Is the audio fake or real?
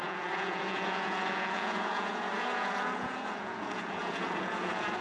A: fake